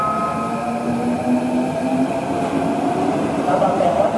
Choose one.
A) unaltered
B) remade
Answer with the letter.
A